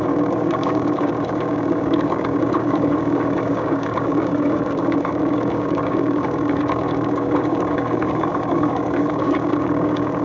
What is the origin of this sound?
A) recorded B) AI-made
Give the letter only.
B